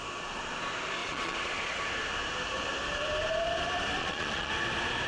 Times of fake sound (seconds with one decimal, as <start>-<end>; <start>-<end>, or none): 1.0-1.8; 4.0-4.5